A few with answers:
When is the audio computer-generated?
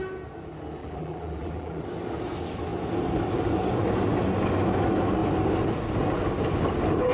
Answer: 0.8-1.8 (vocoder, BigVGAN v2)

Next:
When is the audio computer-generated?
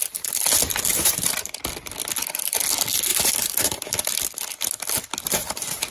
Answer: 0.9-1.6 (vocoder, BigVGAN v2); 3.1-3.8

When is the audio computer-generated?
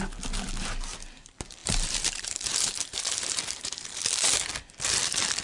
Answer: 1.6-3.4 (vocoder, BigVGAN v2)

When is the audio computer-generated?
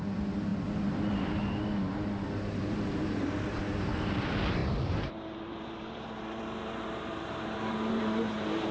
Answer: 0.0-0.5 (vocoder, BigVGAN v2); 2.6-8.7